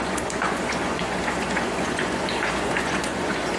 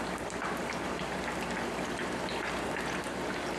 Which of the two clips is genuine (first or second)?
second